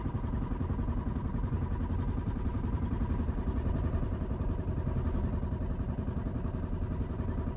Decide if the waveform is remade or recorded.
recorded